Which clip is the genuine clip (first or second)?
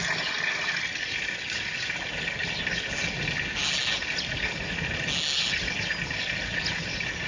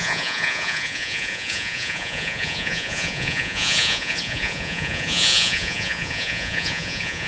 first